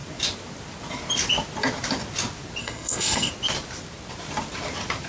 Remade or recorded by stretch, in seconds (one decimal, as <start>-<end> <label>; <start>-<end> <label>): 0.0-2.6 recorded; 2.6-3.3 remade; 3.3-5.1 recorded